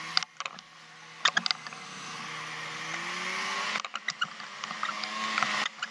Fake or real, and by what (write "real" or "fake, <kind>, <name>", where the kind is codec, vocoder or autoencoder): real